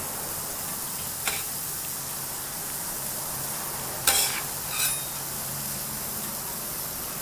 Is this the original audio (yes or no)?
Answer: yes